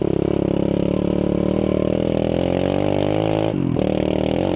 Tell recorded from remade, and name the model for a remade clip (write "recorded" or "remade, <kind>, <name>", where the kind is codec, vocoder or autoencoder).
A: recorded